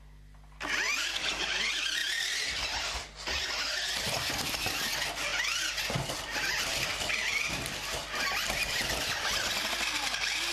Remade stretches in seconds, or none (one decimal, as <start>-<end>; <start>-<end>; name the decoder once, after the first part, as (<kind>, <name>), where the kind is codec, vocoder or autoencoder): none